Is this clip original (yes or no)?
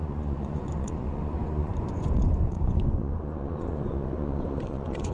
no